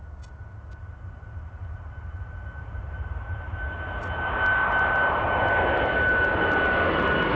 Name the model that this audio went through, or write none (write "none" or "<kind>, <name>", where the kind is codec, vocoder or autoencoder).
none